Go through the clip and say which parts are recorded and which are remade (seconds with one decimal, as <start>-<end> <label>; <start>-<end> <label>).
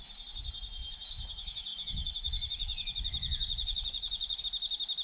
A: 0.0-1.7 recorded; 1.7-4.4 remade; 4.4-5.0 recorded